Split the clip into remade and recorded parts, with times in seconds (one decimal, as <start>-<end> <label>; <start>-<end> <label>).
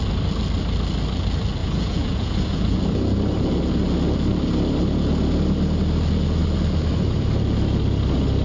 0.0-1.6 recorded; 1.6-2.8 remade; 2.8-8.4 recorded